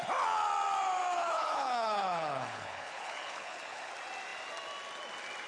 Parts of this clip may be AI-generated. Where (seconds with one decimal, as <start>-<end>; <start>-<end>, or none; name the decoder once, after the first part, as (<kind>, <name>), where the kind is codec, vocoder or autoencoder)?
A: 1.1-3.9 (codec, HILCodec)